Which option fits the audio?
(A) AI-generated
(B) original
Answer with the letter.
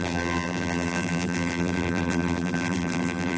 A